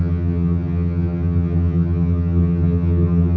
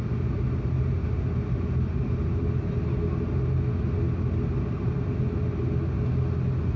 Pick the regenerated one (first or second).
first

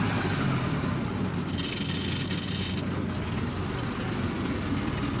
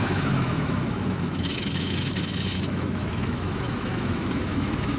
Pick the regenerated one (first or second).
second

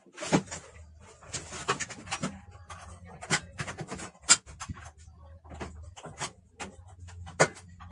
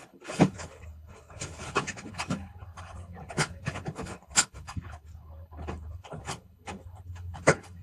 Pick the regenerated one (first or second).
second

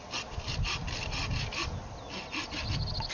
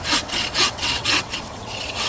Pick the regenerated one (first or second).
second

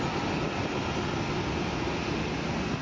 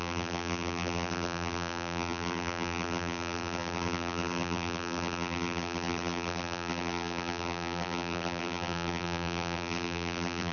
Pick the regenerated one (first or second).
second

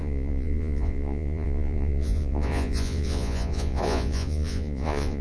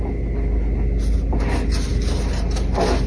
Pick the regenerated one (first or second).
first